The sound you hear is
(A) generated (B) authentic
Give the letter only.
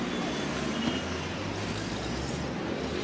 A